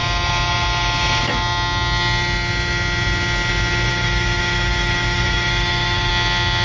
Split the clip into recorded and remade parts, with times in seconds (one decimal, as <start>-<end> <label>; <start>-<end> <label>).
0.0-3.9 recorded; 3.9-6.1 remade; 6.1-6.6 recorded